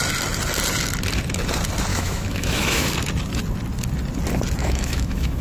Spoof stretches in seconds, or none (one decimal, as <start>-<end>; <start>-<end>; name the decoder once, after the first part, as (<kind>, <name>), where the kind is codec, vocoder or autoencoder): 1.9-2.9 (autoencoder, DAC-VAE); 4.6-5.4